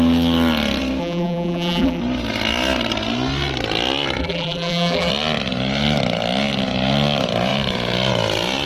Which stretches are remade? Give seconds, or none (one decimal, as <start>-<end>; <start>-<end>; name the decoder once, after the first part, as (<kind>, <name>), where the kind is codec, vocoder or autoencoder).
1.0-2.0 (vocoder, BigVGAN v2); 4.2-5.1